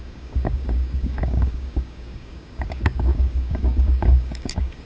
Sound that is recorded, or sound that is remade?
remade